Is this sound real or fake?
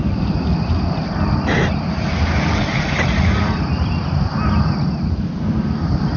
real